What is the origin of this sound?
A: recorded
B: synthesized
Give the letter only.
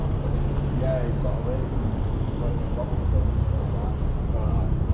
A